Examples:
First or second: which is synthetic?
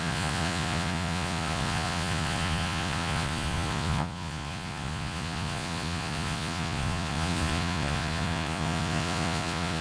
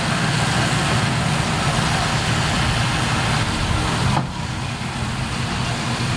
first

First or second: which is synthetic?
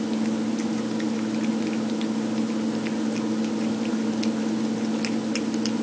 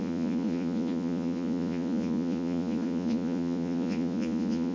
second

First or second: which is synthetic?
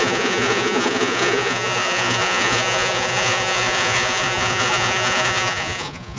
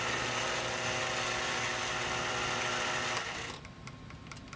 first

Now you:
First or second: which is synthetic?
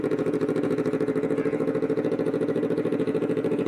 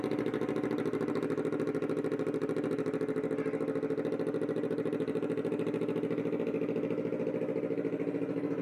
first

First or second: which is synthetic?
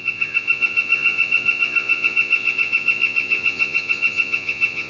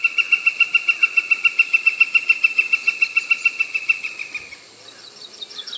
first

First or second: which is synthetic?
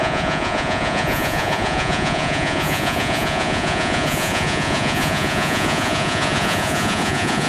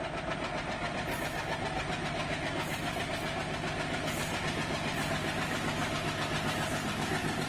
first